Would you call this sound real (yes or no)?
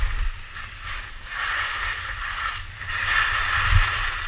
yes